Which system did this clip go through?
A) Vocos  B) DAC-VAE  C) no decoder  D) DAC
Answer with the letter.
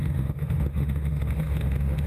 B